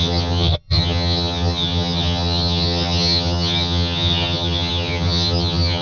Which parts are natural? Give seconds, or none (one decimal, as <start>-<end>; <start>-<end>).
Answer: none